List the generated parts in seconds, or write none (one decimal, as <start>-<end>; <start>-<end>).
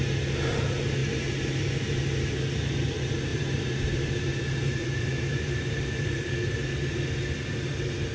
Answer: 3.3-4.1; 4.8-6.5